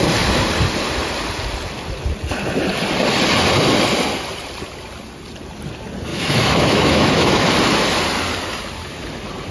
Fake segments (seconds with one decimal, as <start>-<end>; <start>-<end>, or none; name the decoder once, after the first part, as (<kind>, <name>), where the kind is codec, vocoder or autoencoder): 6.1-7.5 (autoencoder, DAC-VAE)